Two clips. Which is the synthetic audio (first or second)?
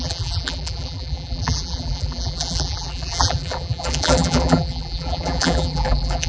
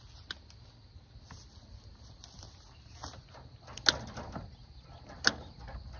first